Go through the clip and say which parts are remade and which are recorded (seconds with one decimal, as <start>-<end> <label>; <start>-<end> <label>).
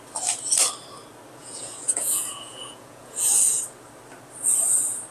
0.0-1.4 recorded; 1.4-3.6 remade; 3.6-5.1 recorded